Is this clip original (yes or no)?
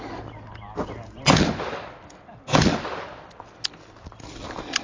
yes